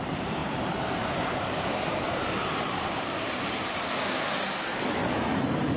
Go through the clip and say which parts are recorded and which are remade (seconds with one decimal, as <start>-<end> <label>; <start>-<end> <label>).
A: 0.0-5.8 remade